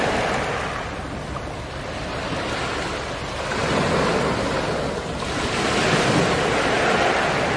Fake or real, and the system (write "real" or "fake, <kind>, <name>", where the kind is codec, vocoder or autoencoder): real